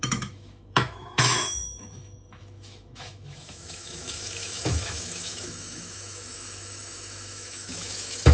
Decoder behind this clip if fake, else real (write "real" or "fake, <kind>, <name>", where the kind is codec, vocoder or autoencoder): fake, autoencoder, DAC-VAE